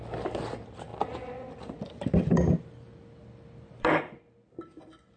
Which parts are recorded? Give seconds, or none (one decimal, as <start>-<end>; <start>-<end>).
none

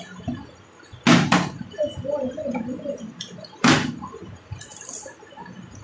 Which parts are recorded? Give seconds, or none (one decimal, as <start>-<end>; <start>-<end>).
0.0-1.1; 4.6-5.8

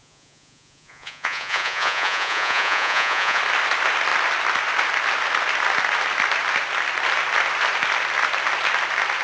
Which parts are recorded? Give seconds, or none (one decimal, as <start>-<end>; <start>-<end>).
3.4-9.2

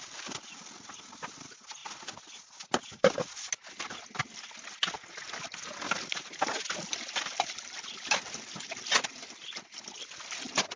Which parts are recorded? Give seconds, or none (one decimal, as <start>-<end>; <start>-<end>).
0.0-10.8

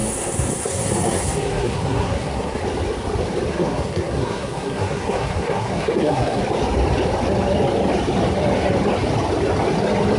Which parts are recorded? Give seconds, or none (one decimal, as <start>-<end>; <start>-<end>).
2.6-3.5; 6.4-10.2

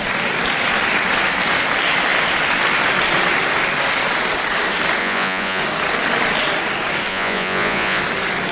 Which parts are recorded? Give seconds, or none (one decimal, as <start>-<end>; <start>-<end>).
0.0-5.0; 5.6-7.1; 8.0-8.5

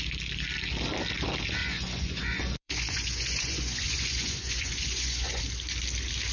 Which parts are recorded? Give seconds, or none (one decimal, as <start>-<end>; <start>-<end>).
0.0-1.6; 5.4-6.3